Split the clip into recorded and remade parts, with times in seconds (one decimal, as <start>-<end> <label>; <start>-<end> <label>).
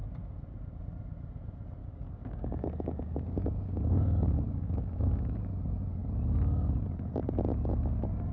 0.0-1.8 recorded; 1.8-5.4 remade; 5.4-8.3 recorded